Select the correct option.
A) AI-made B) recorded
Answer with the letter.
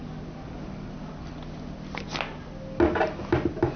B